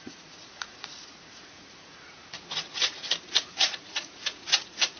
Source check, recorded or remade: remade